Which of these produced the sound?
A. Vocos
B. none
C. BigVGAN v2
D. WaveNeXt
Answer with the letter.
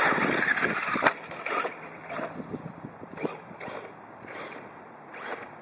C